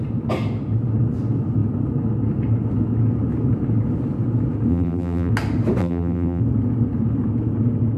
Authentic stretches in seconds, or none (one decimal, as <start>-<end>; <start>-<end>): 0.0-4.7; 5.3-5.8; 6.4-8.0